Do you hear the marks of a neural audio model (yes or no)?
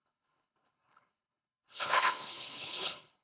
yes